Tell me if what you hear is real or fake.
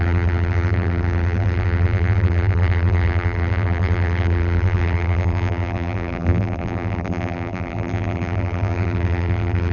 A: fake